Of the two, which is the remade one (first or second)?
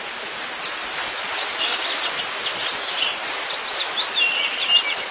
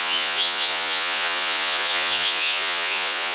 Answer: second